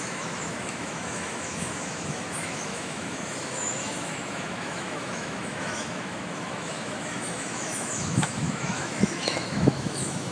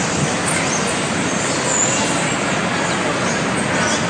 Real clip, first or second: second